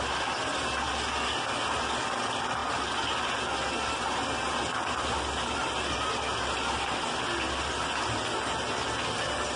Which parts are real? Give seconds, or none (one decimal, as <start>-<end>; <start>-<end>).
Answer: 0.0-9.6